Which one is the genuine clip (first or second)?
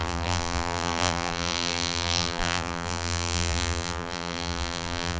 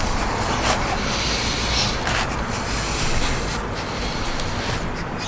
second